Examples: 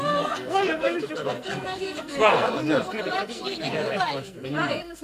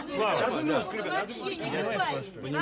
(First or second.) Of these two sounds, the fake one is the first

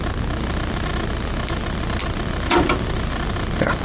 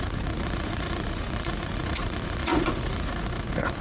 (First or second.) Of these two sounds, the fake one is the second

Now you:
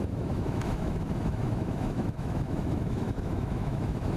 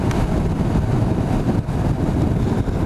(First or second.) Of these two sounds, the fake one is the first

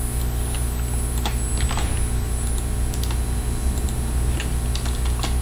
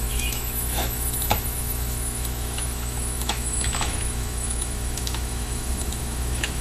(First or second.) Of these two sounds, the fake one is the second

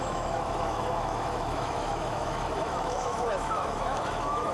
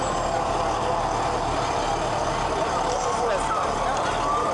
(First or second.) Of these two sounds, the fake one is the first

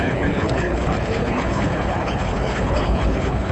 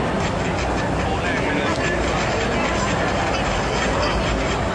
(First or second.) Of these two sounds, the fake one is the first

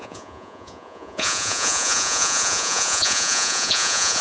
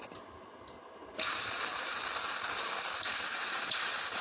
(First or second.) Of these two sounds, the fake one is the first